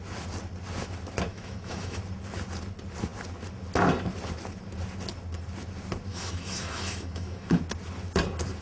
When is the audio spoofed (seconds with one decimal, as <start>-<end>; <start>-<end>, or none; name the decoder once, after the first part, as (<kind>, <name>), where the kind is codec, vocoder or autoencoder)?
1.3-2.0 (autoencoder, DAC-VAE); 6.1-7.6